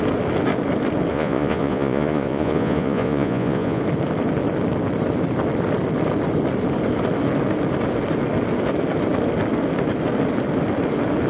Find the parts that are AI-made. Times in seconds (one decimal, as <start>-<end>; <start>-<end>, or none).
1.1-3.8